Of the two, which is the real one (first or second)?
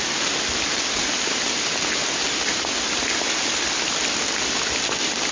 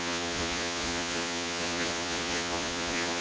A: first